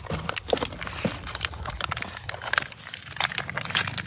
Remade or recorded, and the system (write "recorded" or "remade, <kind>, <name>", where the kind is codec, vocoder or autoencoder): recorded